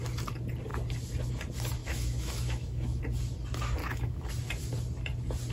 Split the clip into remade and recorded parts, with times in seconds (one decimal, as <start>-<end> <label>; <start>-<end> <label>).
0.0-1.8 recorded; 1.8-3.0 remade; 3.0-3.8 recorded; 3.8-4.3 remade; 4.3-5.5 recorded